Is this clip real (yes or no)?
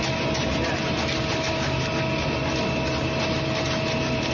yes